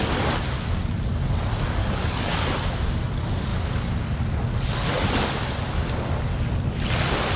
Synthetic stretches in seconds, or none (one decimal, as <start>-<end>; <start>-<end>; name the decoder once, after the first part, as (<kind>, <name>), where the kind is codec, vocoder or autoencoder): 1.8-2.3 (codec, DAC)

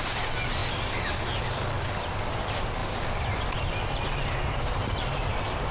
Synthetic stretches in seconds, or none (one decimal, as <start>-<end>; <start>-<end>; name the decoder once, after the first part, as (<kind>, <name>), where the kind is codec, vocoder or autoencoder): none